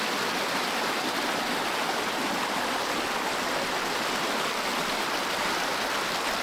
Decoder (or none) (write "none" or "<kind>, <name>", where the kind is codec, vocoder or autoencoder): none